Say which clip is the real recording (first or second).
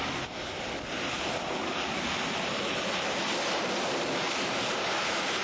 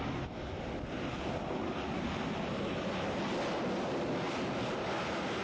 second